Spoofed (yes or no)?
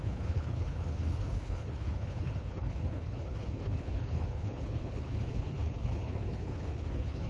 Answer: yes